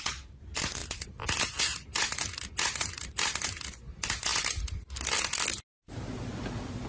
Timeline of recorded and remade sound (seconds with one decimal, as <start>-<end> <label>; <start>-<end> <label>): 0.0-6.9 recorded